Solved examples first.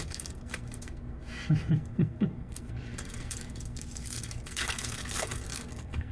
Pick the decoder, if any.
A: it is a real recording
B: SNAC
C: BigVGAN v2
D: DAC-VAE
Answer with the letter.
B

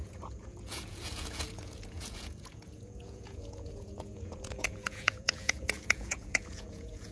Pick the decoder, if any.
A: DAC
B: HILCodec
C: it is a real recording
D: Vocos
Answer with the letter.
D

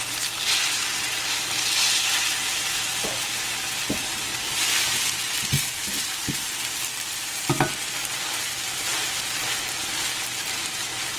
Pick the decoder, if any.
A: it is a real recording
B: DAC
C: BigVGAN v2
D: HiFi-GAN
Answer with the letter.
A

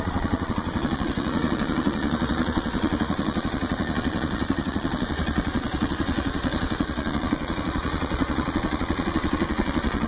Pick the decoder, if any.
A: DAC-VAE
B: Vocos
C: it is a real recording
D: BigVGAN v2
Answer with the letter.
B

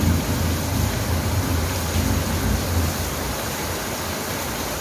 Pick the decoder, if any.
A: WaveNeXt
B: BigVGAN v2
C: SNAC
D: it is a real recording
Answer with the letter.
D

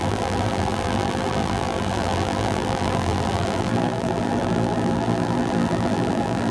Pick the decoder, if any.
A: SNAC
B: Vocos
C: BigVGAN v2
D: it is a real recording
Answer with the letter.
C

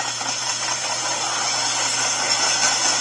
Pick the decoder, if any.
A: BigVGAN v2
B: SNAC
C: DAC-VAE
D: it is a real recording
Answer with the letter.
D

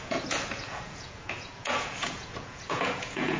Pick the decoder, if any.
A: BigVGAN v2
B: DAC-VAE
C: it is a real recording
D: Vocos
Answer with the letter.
D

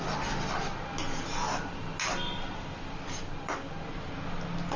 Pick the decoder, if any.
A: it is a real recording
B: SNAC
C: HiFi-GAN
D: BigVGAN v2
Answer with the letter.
A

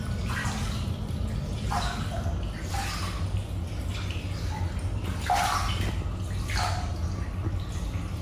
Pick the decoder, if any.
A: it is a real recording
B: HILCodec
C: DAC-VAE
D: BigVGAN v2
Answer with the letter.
A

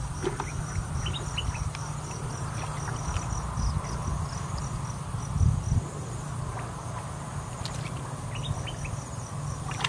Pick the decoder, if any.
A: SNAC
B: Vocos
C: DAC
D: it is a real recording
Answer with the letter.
D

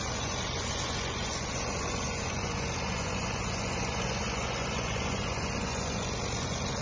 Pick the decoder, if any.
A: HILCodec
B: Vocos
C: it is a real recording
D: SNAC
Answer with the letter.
B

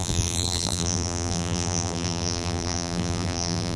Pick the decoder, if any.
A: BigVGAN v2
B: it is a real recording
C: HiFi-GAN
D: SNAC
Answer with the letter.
A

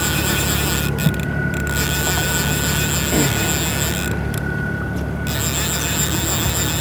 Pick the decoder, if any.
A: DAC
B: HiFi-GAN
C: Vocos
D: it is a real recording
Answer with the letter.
D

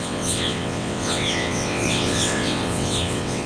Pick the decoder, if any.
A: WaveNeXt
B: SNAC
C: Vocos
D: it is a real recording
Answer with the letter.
A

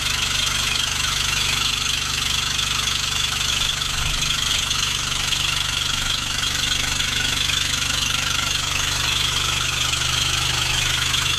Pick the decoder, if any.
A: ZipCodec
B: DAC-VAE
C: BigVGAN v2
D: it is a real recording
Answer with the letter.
B